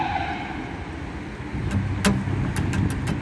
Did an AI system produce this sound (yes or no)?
no